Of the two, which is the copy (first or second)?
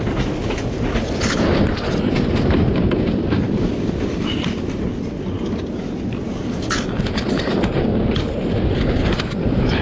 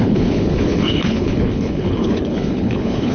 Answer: second